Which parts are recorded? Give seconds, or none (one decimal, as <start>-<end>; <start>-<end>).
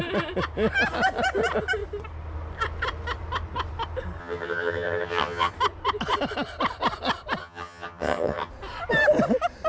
0.0-4.2; 5.5-7.4; 8.5-9.7